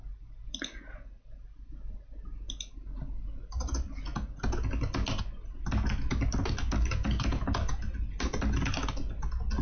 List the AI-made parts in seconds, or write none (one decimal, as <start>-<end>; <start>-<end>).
none